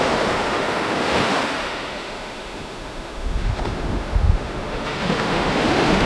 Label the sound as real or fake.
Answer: fake